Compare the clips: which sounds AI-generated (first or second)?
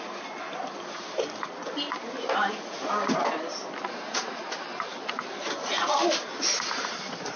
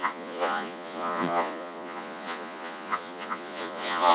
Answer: second